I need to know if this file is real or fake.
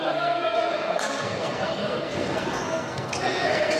fake